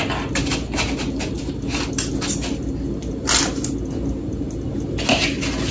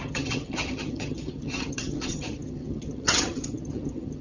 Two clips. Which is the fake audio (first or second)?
second